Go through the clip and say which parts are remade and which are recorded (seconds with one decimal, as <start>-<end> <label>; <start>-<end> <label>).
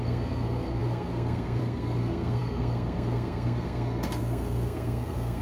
0.0-5.4 remade